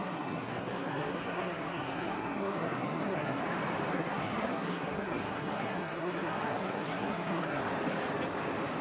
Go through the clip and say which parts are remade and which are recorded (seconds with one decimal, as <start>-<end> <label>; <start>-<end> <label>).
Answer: 0.0-3.4 remade; 3.4-3.9 recorded; 3.9-7.6 remade; 7.6-8.8 recorded